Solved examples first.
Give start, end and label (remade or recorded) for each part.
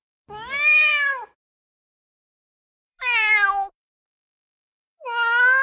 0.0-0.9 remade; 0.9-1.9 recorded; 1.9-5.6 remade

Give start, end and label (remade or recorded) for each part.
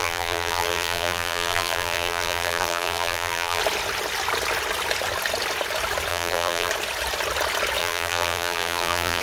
0.0-3.6 remade; 3.6-6.1 recorded; 6.1-6.7 remade; 6.7-7.8 recorded; 7.8-9.2 remade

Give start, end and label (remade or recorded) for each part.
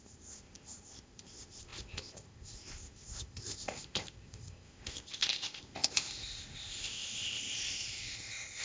0.0-8.6 remade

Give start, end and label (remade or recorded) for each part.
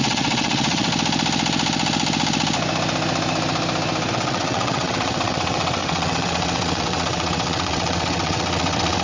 0.0-0.9 remade; 0.9-4.1 recorded; 4.1-9.0 remade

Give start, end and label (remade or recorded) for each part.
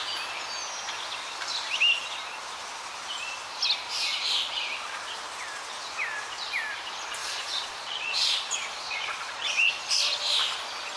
0.0-7.2 recorded; 7.2-9.7 remade; 9.7-11.0 recorded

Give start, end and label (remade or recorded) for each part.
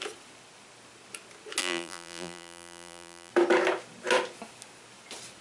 0.0-1.6 recorded; 1.6-3.3 remade; 3.3-5.4 recorded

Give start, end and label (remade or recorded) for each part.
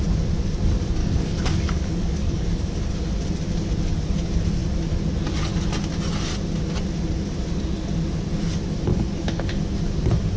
0.0-1.0 recorded; 1.0-2.9 remade; 2.9-8.9 recorded; 8.9-9.5 remade; 9.5-10.4 recorded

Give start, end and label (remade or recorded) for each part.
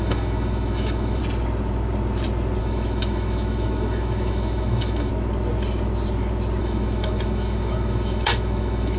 0.0-1.2 remade; 1.2-2.6 recorded; 2.6-5.1 remade; 5.1-6.6 recorded; 6.6-9.0 remade